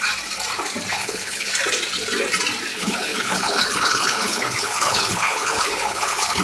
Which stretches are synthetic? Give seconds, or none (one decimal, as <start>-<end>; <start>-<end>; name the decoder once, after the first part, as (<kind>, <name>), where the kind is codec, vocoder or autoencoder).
0.9-1.5 (codec, HILCodec); 2.7-6.4